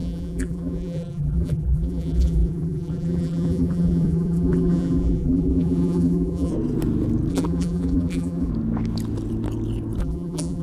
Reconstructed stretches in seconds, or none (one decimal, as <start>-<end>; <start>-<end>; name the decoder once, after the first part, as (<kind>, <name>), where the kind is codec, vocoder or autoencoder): 0.0-6.5 (vocoder, BigVGAN v2); 7.3-8.5; 10.0-10.6